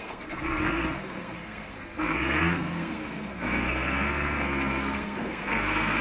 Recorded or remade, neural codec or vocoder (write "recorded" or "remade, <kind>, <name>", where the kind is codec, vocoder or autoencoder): remade, codec, SNAC